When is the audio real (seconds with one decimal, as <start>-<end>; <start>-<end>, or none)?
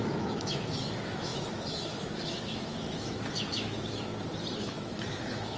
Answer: 4.1-4.6